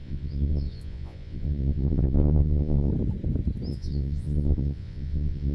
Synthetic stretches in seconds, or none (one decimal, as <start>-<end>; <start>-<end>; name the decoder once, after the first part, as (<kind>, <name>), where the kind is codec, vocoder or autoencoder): 0.0-2.9 (vocoder, Vocos); 3.7-5.5